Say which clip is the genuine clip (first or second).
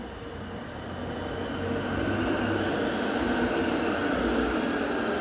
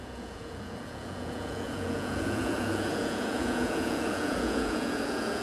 first